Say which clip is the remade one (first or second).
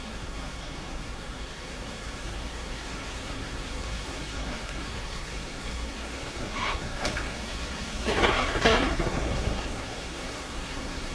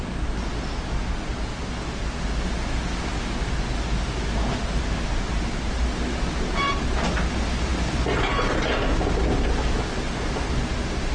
first